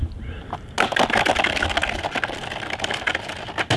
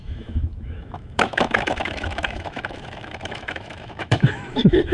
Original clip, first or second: first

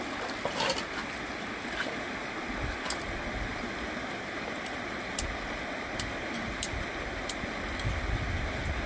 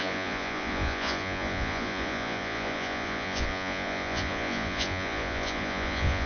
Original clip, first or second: first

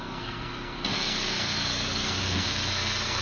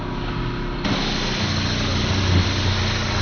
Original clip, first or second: second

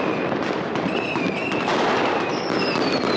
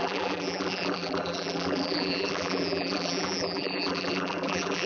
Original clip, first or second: first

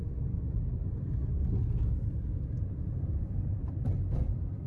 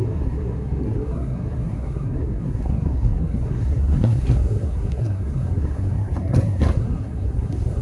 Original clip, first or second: first